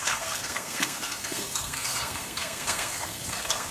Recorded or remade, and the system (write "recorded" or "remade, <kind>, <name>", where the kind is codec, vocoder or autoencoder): remade, codec, SNAC